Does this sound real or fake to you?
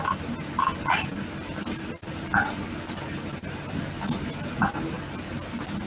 real